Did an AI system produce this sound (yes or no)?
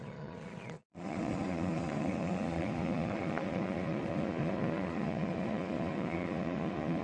yes